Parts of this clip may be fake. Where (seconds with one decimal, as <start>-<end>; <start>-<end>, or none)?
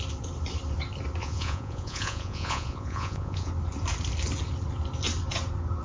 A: 1.2-3.5